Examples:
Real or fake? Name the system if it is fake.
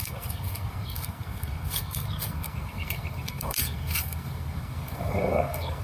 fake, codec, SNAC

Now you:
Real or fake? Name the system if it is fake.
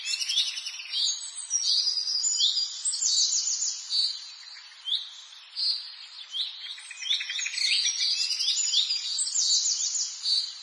real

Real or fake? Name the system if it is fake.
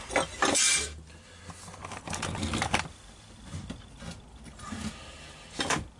real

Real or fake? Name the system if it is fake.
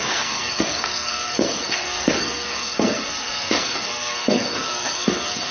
fake, codec, SNAC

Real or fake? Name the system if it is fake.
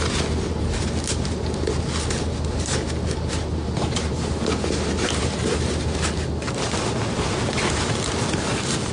real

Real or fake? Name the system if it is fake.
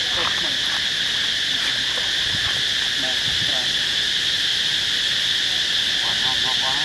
real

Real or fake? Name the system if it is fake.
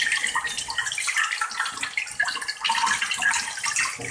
real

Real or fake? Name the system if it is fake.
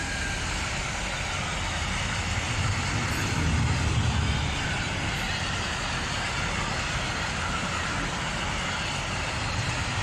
real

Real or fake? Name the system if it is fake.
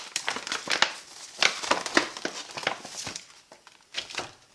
real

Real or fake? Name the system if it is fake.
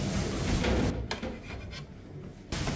real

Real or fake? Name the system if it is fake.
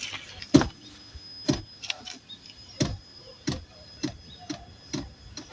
real